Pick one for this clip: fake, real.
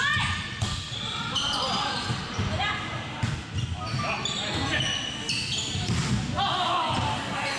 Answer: real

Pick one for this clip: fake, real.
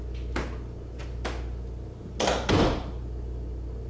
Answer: real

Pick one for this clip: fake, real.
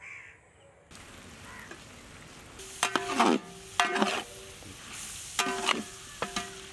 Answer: real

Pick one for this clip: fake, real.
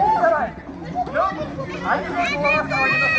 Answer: real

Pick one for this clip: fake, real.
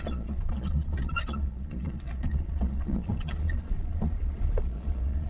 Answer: fake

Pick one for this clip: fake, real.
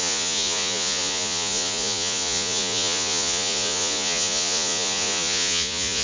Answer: fake